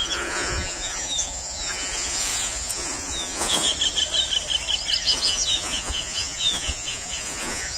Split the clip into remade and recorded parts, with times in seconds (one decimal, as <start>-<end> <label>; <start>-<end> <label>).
0.0-3.7 remade; 3.7-5.0 recorded; 5.0-7.8 remade